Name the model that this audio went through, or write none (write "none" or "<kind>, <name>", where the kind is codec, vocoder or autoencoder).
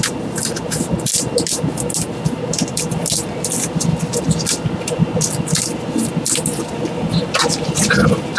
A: none